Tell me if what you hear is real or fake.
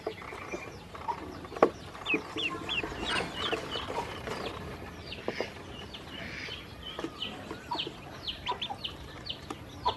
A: real